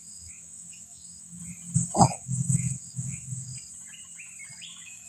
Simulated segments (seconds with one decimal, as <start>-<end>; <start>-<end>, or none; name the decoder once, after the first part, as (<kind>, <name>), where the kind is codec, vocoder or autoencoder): 0.0-1.4 (autoencoder, DAC-VAE); 2.0-3.5; 4.6-5.1